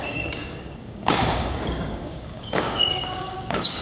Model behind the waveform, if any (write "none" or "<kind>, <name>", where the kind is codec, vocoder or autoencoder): codec, DAC